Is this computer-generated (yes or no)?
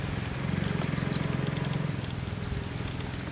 no